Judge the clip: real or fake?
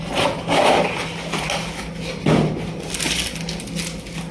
real